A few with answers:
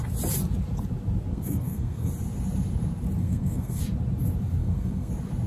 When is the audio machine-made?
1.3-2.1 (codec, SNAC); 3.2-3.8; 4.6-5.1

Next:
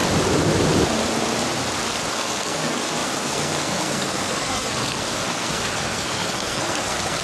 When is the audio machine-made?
2.1-7.2 (codec, SNAC)

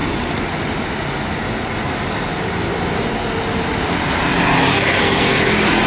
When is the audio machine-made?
4.7-5.4 (codec, SNAC)

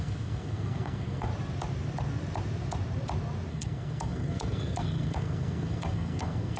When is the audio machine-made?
0.0-1.3 (codec, SNAC); 3.5-6.6